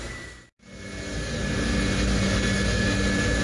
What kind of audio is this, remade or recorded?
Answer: recorded